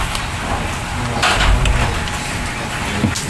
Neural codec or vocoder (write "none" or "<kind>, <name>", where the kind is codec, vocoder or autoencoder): none